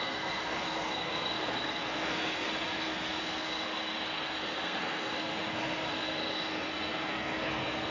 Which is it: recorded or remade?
remade